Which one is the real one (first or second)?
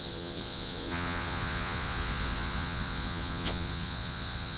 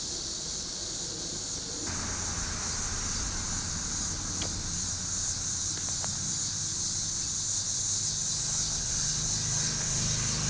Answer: second